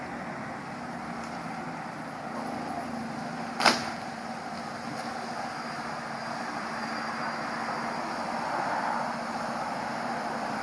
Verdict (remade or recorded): recorded